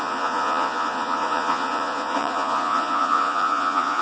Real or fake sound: fake